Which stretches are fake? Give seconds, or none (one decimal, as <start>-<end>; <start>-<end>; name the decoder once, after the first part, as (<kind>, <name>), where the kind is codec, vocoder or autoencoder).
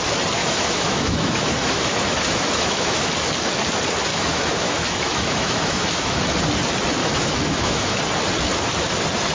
0.4-3.1 (autoencoder, DAC-VAE); 4.1-6.2; 7.0-8.0